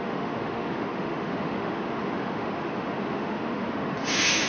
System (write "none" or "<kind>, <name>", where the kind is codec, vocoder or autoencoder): autoencoder, DAC-VAE